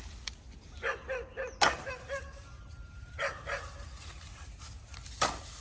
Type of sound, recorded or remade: recorded